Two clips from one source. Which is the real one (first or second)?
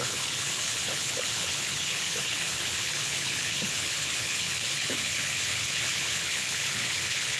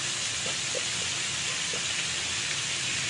second